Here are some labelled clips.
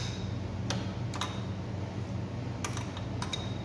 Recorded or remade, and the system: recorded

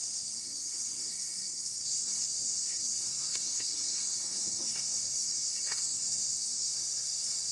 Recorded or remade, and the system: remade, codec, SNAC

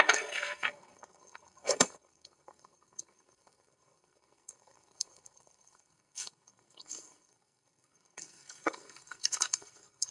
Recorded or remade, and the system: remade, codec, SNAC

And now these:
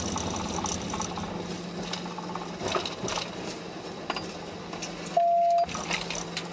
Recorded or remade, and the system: recorded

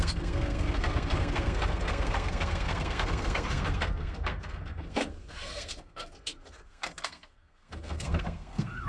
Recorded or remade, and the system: remade, codec, SNAC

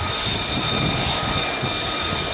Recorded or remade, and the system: recorded